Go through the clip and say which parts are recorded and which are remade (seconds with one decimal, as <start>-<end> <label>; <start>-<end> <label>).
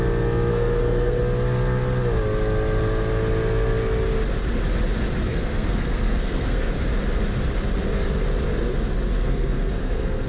0.0-0.5 recorded; 0.5-1.2 remade; 1.2-5.3 recorded; 5.3-6.7 remade; 6.7-9.2 recorded; 9.2-10.3 remade